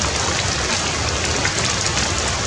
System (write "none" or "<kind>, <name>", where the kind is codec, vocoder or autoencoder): none